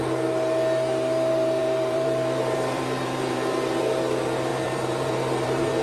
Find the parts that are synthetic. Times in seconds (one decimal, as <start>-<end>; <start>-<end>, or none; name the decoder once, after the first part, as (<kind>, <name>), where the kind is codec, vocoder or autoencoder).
1.6-3.8 (vocoder, BigVGAN v2); 4.5-5.8